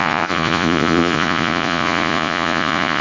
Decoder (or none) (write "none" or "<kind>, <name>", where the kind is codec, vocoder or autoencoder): vocoder, Vocos